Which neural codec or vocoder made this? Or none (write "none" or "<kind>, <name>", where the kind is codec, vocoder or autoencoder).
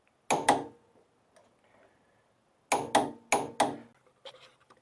none